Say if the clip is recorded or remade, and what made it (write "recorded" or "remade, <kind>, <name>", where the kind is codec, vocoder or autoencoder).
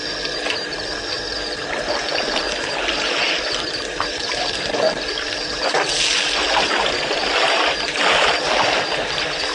remade, vocoder, BigVGAN v2